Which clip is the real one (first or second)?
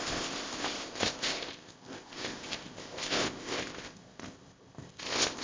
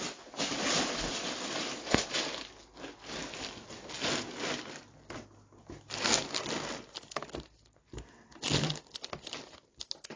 second